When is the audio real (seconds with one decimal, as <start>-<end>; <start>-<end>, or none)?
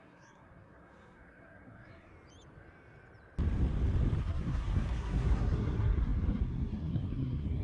2.1-4.2